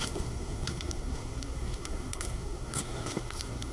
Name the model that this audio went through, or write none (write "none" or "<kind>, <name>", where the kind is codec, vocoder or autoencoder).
codec, SNAC